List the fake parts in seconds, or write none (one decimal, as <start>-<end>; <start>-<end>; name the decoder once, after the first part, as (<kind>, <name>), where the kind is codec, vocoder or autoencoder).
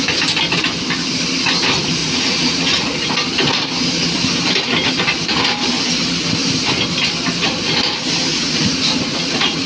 2.0-3.1 (vocoder, Vocos); 8.3-9.7